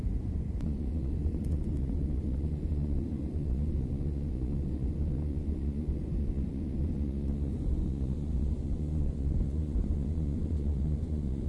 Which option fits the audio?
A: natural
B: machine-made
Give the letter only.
B